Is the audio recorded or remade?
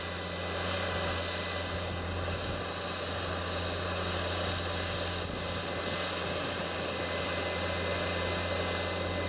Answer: recorded